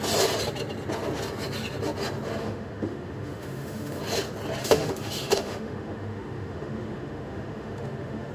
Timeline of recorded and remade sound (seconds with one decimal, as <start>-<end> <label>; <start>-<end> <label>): 0.0-2.4 recorded; 2.4-4.0 remade; 4.0-4.6 recorded; 4.6-8.3 remade